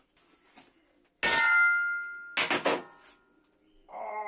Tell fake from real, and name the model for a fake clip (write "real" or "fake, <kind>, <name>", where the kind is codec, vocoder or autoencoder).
real